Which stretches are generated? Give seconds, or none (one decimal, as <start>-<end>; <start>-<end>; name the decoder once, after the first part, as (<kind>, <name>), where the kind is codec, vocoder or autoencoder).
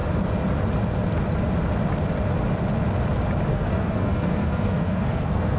3.5-5.6 (codec, SNAC)